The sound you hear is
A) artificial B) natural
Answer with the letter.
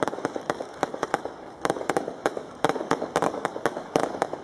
A